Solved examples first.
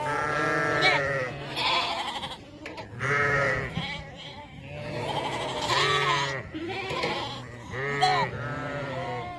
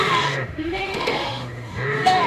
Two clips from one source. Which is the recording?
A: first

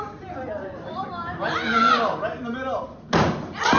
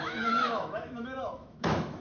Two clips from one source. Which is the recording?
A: first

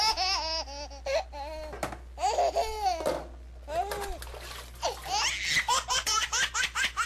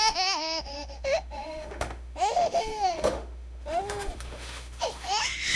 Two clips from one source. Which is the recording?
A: first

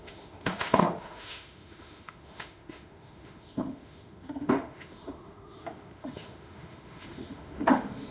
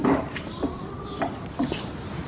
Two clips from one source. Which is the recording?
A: second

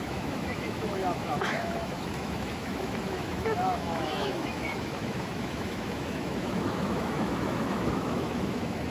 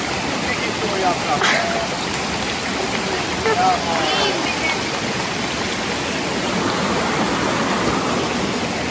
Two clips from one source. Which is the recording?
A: second